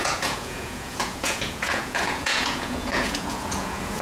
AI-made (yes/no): yes